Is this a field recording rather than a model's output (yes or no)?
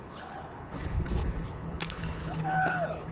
no